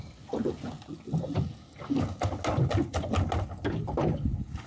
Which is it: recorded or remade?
recorded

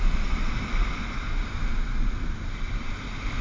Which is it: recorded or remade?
recorded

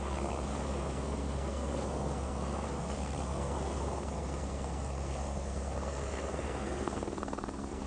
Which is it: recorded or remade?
remade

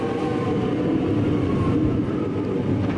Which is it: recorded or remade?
recorded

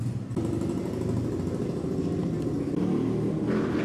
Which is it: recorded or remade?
recorded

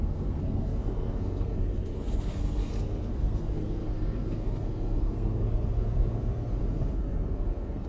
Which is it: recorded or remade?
remade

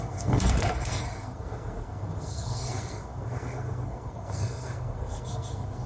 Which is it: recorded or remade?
remade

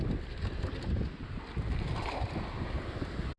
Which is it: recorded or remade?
recorded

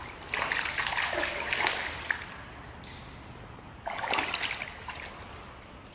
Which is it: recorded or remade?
recorded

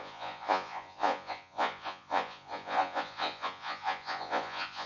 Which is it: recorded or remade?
remade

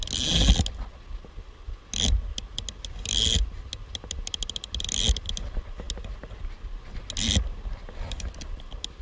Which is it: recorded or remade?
recorded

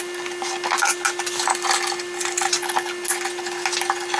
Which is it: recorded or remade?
recorded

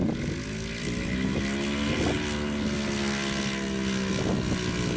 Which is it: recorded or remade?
recorded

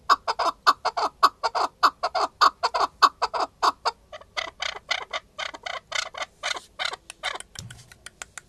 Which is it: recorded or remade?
recorded